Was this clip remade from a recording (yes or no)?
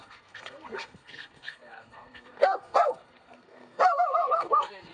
yes